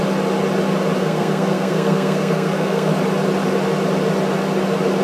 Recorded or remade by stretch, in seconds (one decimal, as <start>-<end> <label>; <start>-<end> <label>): 0.0-1.0 recorded; 1.0-2.9 remade; 2.9-5.0 recorded